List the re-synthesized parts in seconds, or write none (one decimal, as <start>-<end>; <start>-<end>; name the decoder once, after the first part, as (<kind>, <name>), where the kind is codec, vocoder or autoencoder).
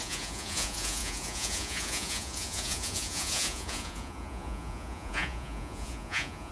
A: 0.0-6.5 (vocoder, Vocos)